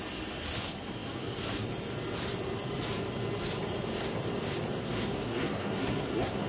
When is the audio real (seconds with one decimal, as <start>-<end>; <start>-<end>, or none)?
0.0-4.8